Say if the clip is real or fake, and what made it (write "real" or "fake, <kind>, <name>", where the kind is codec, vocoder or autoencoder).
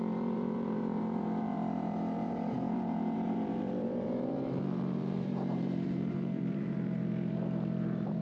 fake, vocoder, BigVGAN v2